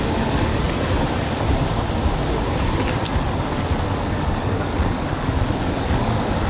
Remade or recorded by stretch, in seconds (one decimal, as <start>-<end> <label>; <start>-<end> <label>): 0.0-0.5 remade; 0.5-4.4 recorded; 4.4-6.5 remade